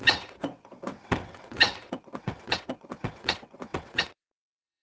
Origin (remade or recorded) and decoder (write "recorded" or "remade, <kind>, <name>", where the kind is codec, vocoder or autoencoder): remade, vocoder, WaveNeXt